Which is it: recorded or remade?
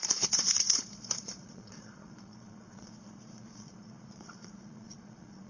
remade